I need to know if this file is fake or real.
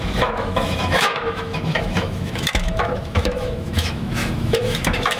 fake